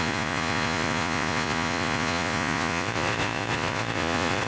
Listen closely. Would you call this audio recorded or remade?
remade